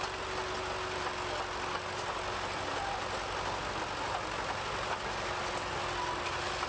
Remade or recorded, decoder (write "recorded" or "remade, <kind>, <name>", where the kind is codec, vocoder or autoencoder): recorded